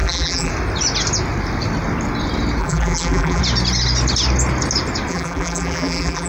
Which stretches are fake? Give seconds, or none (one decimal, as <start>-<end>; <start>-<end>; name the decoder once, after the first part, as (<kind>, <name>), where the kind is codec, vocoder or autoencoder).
0.0-0.5 (vocoder, BigVGAN v2); 2.6-3.4; 5.1-6.3